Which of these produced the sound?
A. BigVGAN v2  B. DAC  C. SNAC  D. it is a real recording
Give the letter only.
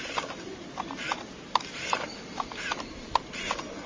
D